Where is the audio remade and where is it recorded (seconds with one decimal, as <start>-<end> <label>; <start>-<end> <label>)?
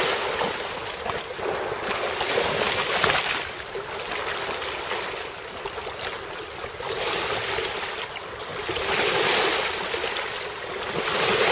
0.0-11.5 recorded